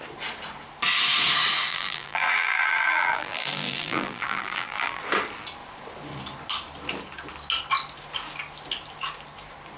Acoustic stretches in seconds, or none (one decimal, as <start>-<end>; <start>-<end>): 0.0-1.7; 5.0-9.8